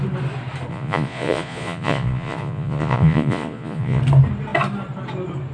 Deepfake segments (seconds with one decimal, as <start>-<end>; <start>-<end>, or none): 0.7-4.0